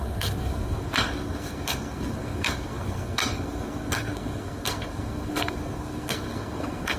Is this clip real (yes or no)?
no